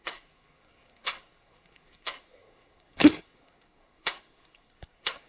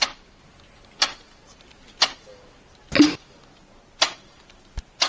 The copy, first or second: first